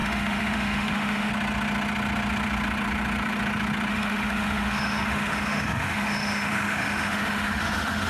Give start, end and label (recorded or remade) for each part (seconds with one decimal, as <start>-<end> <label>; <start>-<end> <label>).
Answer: 0.0-1.3 remade; 1.3-3.9 recorded; 3.9-8.1 remade